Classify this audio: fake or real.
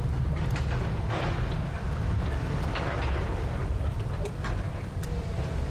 real